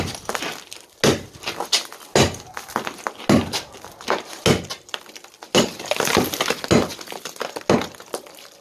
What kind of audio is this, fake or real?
real